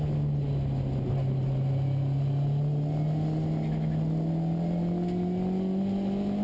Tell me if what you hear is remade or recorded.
recorded